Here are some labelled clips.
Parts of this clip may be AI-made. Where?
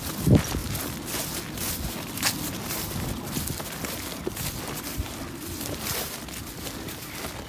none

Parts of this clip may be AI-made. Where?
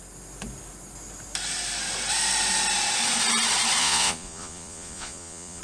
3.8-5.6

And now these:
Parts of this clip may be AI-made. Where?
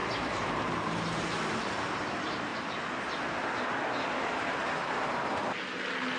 0.0-2.5